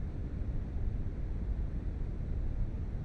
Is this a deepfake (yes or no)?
no